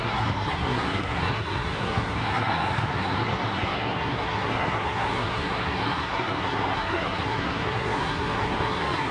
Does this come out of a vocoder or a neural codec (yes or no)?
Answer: yes